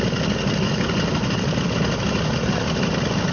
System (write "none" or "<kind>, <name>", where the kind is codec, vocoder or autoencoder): none